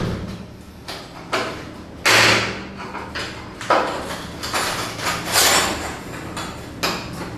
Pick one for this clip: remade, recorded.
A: recorded